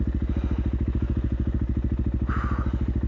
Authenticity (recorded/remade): recorded